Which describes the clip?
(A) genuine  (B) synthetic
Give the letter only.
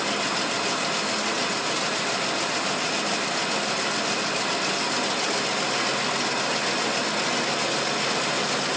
A